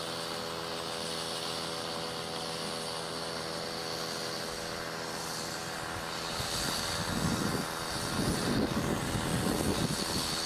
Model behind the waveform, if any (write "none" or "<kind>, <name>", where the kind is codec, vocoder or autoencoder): none